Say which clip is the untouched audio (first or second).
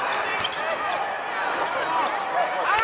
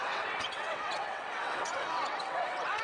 first